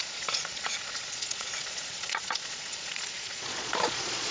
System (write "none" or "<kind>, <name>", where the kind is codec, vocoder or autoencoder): vocoder, Vocos